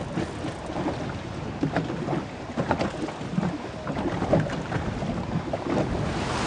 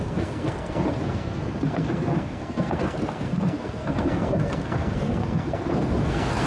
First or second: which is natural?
first